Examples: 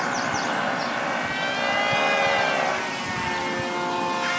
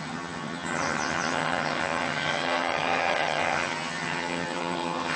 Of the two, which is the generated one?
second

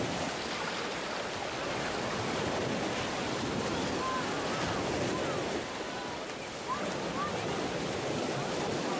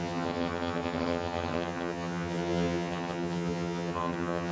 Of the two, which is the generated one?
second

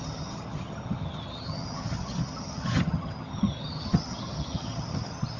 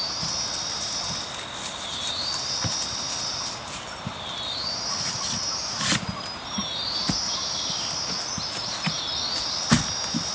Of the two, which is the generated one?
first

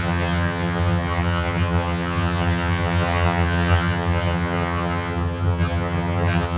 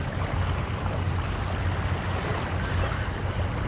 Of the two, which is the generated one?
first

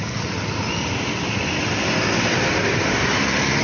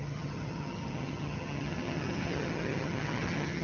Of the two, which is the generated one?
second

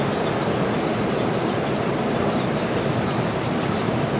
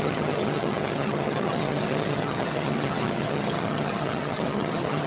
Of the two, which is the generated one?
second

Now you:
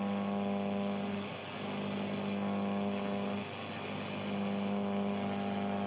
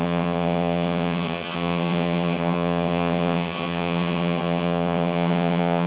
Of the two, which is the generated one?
second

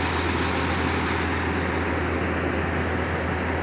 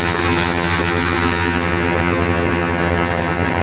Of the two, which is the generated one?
second